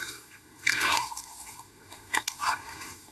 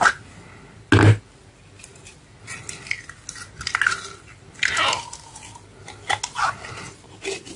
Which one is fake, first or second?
first